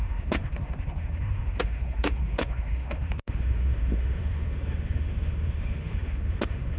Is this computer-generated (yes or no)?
yes